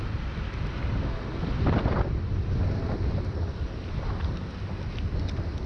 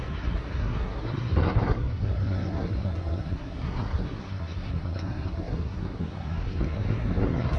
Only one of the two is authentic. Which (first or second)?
first